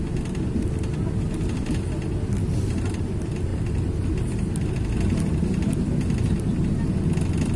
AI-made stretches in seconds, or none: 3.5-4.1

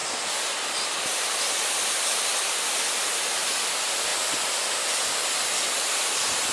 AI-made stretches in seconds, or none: 0.0-6.5

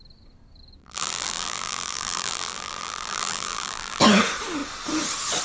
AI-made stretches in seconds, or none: 0.8-4.0

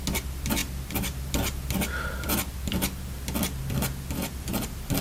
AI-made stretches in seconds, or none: none